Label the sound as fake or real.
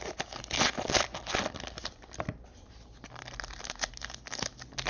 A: real